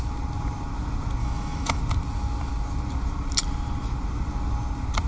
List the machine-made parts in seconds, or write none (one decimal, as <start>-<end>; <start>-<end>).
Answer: 1.2-1.8